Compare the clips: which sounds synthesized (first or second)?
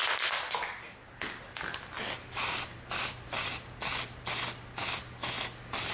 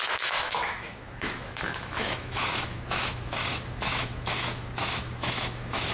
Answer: second